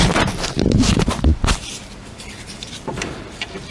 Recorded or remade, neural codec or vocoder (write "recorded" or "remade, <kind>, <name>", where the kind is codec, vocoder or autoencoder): remade, vocoder, BigVGAN v2